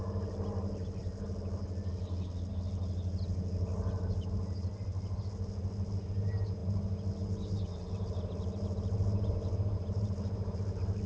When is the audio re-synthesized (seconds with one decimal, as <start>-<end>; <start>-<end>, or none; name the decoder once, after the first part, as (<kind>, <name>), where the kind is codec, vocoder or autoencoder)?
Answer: none